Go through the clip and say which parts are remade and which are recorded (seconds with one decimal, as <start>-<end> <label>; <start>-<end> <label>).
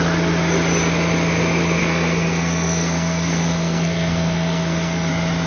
0.0-1.8 recorded; 1.8-5.1 remade; 5.1-5.5 recorded